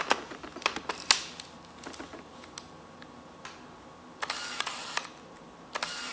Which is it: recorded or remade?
recorded